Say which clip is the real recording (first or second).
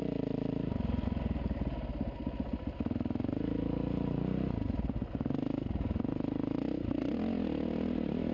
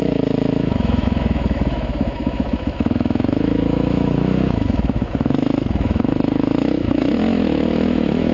first